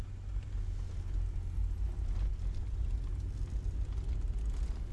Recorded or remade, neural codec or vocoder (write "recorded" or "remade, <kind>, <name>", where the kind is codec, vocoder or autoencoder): recorded